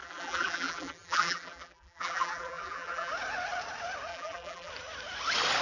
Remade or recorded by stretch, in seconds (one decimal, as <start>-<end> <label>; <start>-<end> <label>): 0.0-3.1 remade; 3.1-4.1 recorded; 4.1-4.7 remade; 4.7-5.6 recorded